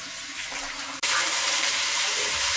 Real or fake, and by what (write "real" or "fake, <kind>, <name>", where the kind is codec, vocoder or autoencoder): fake, vocoder, BigVGAN v2